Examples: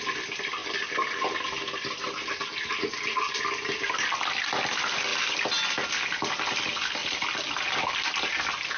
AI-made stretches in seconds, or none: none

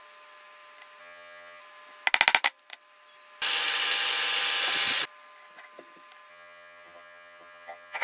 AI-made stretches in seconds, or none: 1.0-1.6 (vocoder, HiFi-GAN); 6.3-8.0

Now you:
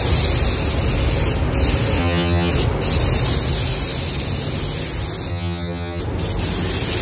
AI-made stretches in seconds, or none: 2.0-2.5 (vocoder, HiFi-GAN); 5.3-6.0

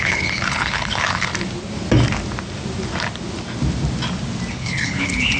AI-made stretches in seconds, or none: 0.0-1.3 (codec, HILCodec); 4.5-5.4

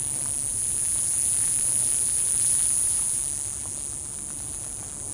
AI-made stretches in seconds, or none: 0.5-3.2 (vocoder, BigVGAN v2)